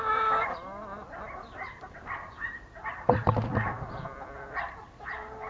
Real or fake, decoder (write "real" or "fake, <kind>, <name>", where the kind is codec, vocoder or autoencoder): real